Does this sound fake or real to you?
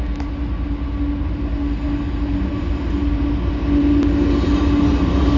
real